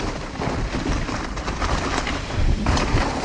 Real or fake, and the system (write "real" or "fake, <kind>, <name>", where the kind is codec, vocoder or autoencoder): real